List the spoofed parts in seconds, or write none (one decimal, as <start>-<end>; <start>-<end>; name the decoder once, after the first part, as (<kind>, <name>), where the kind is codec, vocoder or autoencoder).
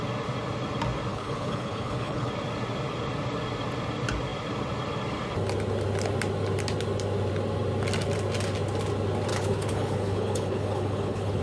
1.1-2.3 (codec, HILCodec); 9.3-11.4